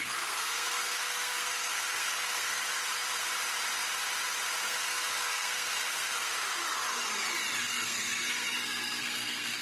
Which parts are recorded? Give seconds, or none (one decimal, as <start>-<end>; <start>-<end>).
2.8-4.6; 6.3-7.6